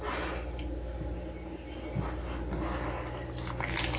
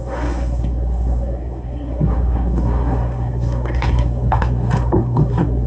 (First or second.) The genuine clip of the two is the first